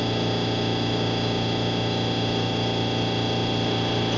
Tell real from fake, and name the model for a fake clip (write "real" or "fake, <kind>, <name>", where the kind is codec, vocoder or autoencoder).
real